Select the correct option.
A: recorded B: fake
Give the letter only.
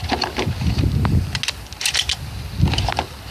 A